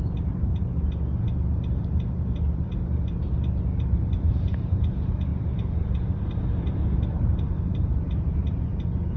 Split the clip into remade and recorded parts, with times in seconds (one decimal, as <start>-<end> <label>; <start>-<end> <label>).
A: 0.0-0.5 remade; 0.5-3.9 recorded; 3.9-9.2 remade